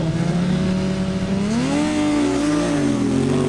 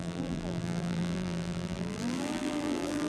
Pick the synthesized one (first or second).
second